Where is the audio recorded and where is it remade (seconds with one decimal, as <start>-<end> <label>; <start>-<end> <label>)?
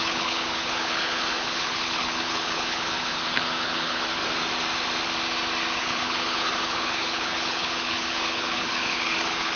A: 0.0-4.2 remade; 4.2-5.8 recorded; 5.8-9.6 remade